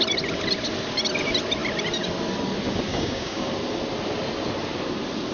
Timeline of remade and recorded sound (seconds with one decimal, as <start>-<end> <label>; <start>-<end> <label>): 0.0-2.9 recorded; 2.9-3.5 remade; 3.5-5.3 recorded